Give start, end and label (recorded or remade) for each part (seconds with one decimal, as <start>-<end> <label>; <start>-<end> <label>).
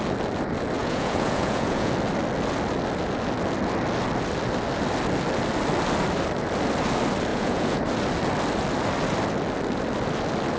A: 0.0-0.8 recorded; 0.8-1.9 remade; 1.9-7.3 recorded; 7.3-7.8 remade; 7.8-10.6 recorded